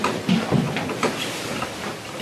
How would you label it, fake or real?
real